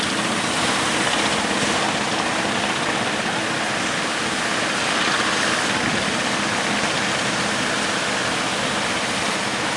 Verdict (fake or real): real